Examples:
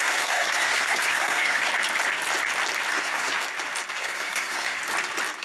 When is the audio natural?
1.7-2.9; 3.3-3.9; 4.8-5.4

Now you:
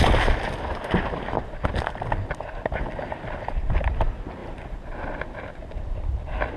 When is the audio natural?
0.0-6.6